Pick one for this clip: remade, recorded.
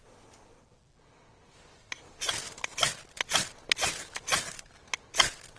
recorded